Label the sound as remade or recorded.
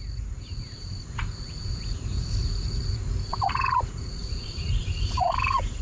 remade